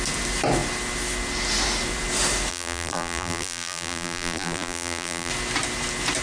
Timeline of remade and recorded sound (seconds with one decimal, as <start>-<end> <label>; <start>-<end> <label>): 0.0-2.5 recorded; 2.5-5.3 remade; 5.3-6.2 recorded